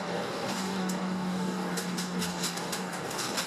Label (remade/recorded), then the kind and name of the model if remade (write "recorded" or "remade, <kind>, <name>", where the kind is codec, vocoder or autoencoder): remade, codec, DAC